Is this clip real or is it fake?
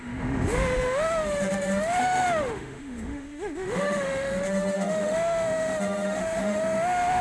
fake